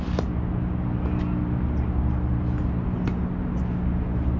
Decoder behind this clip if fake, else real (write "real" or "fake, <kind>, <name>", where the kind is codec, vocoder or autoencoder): real